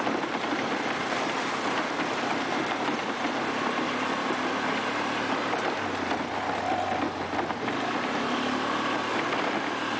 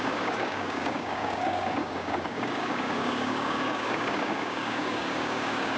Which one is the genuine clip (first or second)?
first